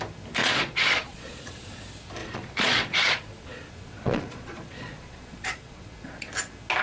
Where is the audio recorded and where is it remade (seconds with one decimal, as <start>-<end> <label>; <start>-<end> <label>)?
0.0-0.4 recorded; 0.4-1.8 remade; 1.8-2.2 recorded; 2.2-6.3 remade; 6.3-6.8 recorded